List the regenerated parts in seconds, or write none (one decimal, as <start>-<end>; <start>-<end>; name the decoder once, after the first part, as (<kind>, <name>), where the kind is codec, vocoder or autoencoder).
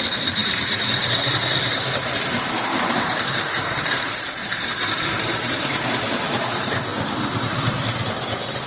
0.0-6.9 (vocoder, BigVGAN v2)